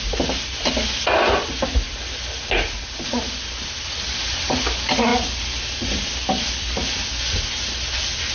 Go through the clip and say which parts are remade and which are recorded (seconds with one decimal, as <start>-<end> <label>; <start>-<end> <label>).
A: 0.0-8.3 recorded